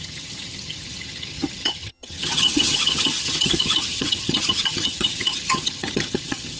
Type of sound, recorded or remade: remade